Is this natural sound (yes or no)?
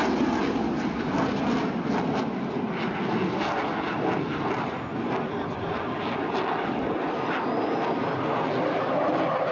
yes